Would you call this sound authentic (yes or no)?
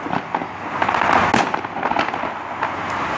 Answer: yes